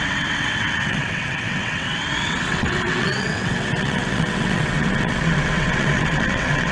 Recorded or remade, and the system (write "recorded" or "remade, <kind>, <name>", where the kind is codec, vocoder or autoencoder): remade, vocoder, WaveNeXt